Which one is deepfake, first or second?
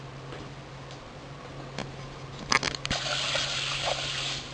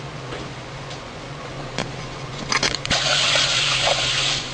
second